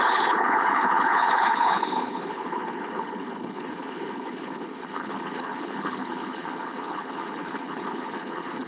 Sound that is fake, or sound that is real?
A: fake